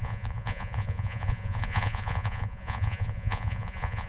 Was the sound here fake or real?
fake